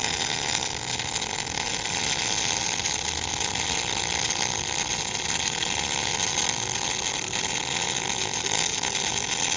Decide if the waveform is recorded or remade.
recorded